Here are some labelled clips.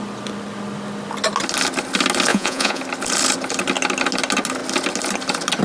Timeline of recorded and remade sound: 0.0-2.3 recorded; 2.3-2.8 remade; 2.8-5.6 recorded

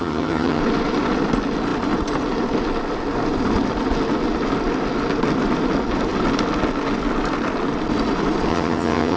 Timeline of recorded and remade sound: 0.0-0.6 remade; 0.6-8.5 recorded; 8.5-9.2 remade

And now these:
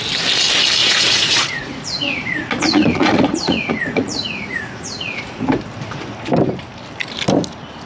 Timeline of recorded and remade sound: 0.0-0.8 recorded; 0.8-5.5 remade; 5.5-7.9 recorded

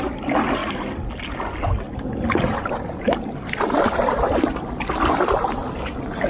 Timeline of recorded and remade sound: 0.0-6.3 recorded